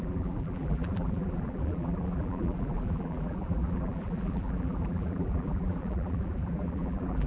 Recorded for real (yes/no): no